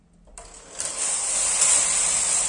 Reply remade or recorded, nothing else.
recorded